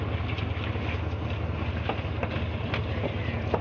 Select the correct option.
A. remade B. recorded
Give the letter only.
B